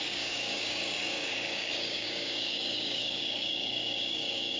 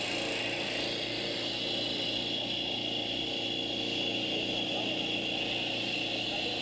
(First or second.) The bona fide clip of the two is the second